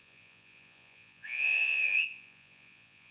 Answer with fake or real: fake